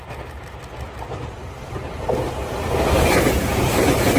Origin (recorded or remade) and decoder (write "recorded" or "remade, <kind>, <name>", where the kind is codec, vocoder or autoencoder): recorded